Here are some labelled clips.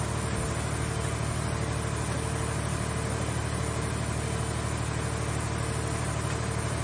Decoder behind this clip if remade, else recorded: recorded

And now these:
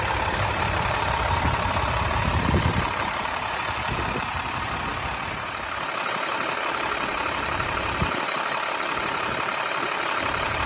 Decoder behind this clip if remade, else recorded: remade, vocoder, BigVGAN v2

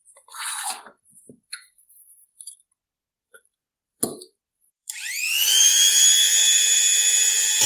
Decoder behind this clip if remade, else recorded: remade, vocoder, BigVGAN v2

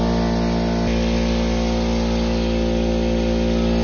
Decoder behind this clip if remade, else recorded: recorded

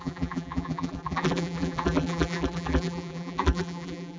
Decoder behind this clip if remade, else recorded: remade, vocoder, BigVGAN v2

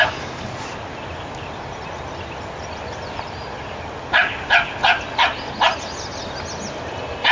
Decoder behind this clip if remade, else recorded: recorded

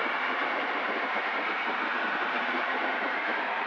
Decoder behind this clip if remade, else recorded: remade, vocoder, BigVGAN v2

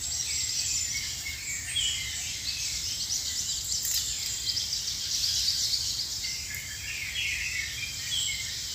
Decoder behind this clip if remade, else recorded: recorded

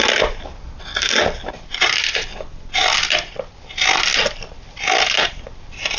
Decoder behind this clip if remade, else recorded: recorded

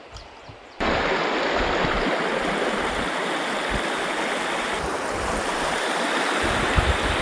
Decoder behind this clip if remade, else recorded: recorded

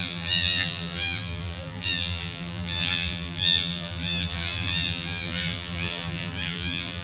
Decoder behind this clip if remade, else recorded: remade, vocoder, BigVGAN v2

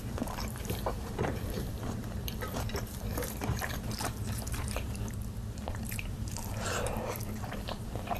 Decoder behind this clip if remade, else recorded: remade, vocoder, BigVGAN v2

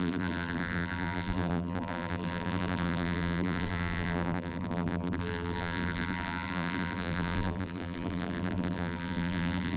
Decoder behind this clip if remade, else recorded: remade, vocoder, BigVGAN v2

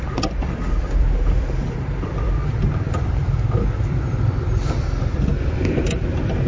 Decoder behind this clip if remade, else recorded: remade, vocoder, BigVGAN v2